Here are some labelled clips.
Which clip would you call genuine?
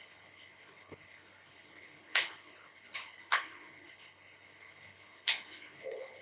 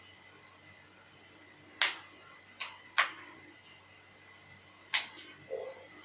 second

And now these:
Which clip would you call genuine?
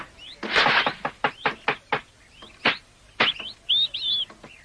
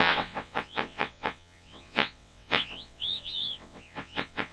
first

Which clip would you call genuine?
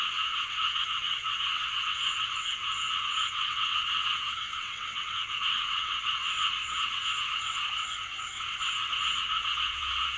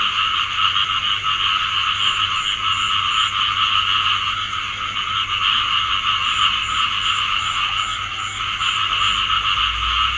second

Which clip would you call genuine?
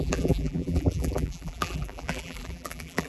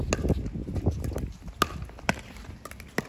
second